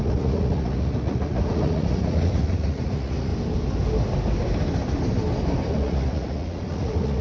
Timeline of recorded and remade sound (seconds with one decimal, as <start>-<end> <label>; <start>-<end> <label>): 0.0-3.3 remade; 3.3-5.7 recorded; 5.7-7.2 remade